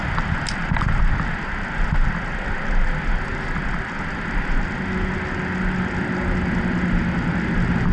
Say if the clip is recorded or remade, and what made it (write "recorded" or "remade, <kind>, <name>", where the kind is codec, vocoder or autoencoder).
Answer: recorded